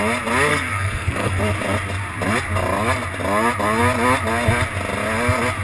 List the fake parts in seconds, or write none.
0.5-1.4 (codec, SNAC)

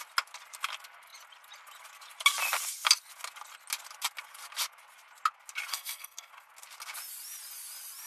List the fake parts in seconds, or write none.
5.7-6.3 (codec, SNAC)

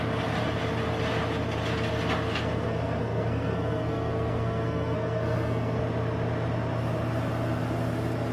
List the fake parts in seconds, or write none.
2.3-5.8 (codec, SNAC)

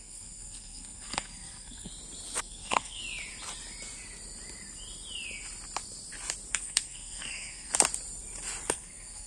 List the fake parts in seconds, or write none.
0.0-1.9 (codec, SNAC); 2.4-3.0; 6.5-7.7; 8.7-9.3

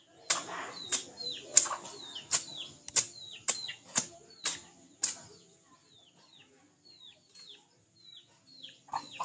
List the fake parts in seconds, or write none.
none

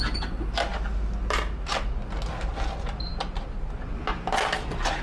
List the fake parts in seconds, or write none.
none